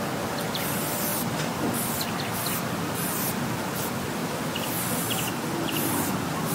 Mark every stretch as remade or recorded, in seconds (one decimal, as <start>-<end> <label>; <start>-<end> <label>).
0.0-4.2 recorded; 4.2-5.3 remade; 5.3-6.5 recorded